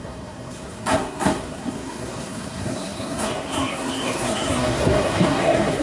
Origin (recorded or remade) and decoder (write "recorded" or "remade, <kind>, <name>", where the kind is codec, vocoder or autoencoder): remade, codec, SNAC